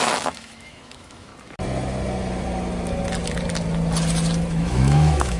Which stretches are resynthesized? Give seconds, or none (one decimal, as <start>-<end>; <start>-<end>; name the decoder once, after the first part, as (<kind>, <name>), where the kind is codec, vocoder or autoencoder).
0.0-1.3 (autoencoder, DAC-VAE); 4.5-5.4